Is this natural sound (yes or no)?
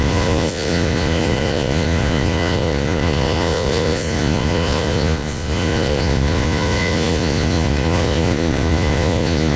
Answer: no